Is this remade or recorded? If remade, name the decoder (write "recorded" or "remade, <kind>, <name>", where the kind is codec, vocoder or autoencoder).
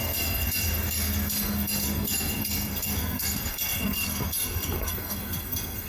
remade, codec, SNAC